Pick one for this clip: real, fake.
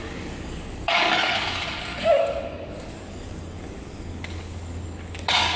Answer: fake